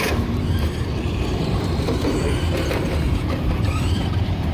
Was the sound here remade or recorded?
remade